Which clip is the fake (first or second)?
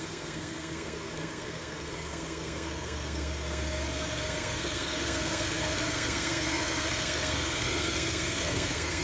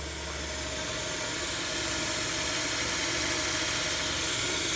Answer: first